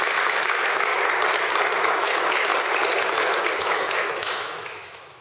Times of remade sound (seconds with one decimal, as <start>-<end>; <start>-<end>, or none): 0.0-0.9; 1.8-2.5; 3.6-5.2